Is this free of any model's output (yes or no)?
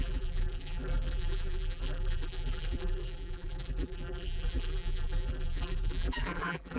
no